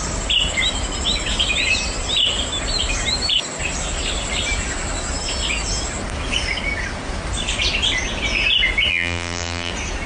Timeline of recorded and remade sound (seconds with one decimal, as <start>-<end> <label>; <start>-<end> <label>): 0.0-8.9 recorded; 8.9-9.7 remade; 9.7-10.1 recorded

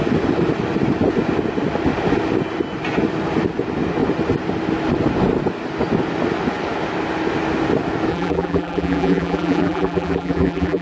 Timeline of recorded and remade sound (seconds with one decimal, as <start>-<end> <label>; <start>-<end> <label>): 0.0-8.1 recorded; 8.1-10.8 remade

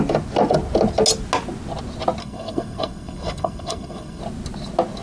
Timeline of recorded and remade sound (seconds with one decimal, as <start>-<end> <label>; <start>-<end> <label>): 0.0-2.2 recorded; 2.2-4.2 remade; 4.2-5.0 recorded

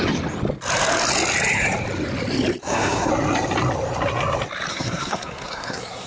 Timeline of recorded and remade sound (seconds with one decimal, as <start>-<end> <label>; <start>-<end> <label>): 0.0-2.6 recorded; 2.6-3.1 remade; 3.1-4.7 recorded; 4.7-6.1 remade

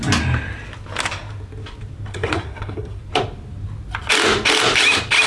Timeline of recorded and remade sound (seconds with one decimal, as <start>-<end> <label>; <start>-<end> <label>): 0.0-2.1 recorded; 2.1-3.0 remade; 3.0-5.3 recorded

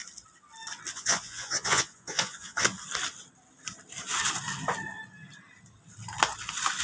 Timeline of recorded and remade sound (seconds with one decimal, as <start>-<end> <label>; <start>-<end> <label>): 0.0-0.9 recorded; 0.9-2.7 remade; 2.7-6.8 recorded

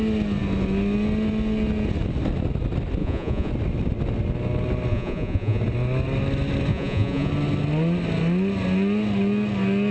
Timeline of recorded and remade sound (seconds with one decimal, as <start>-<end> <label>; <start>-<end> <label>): 0.0-3.0 recorded; 3.0-3.5 remade; 3.5-4.9 recorded; 4.9-5.6 remade; 5.6-6.7 recorded; 6.7-7.3 remade; 7.3-9.9 recorded

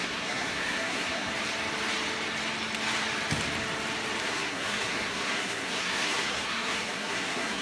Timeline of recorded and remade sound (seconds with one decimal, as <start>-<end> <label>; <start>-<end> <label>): 0.0-1.3 remade; 1.3-4.2 recorded; 4.2-7.6 remade